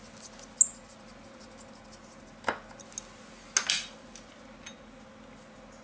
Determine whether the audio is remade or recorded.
recorded